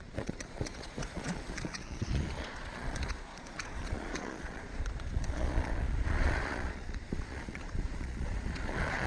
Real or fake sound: fake